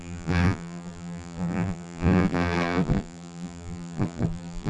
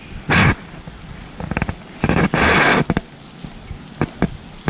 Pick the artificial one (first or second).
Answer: first